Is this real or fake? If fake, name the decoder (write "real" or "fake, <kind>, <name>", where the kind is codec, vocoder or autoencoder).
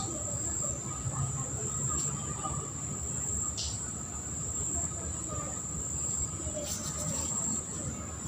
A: fake, vocoder, BigVGAN v2